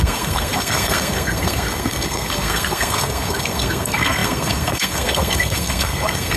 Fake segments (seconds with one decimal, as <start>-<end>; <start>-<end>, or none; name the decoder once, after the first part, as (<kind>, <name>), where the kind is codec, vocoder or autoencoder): 0.0-6.4 (codec, SNAC)